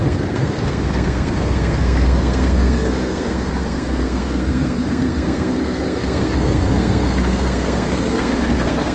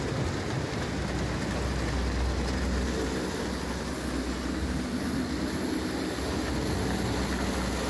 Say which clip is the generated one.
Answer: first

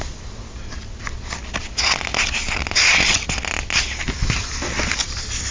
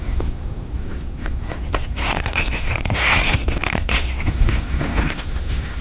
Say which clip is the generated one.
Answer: second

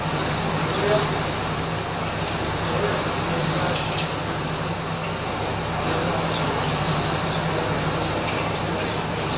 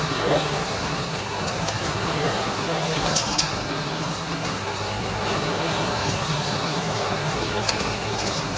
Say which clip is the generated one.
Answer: second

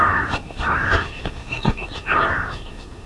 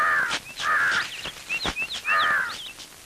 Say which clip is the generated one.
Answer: first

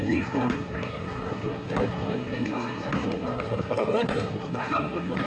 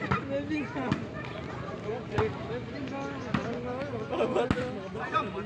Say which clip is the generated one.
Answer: first